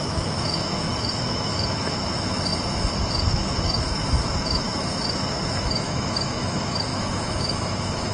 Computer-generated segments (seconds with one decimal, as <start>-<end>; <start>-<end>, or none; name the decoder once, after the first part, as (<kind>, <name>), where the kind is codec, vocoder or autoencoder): 0.0-2.5 (autoencoder, DAC-VAE); 3.1-8.1